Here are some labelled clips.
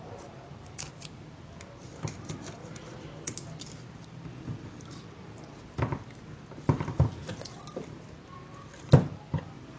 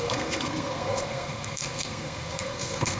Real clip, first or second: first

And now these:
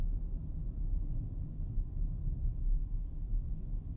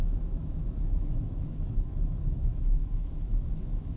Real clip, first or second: first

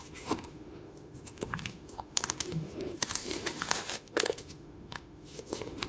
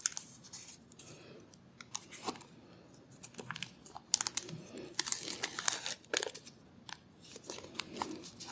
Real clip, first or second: second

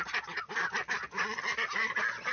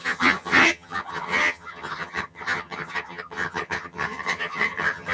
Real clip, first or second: first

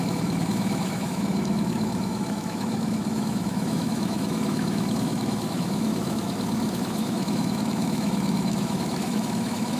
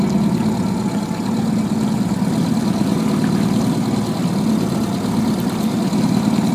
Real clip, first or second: second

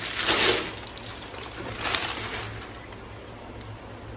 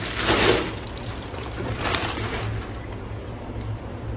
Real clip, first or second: first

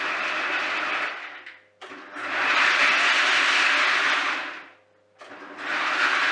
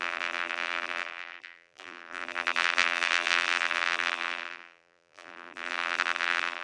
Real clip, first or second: first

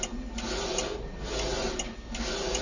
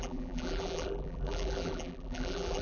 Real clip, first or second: first